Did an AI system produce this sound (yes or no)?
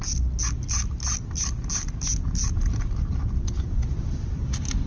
no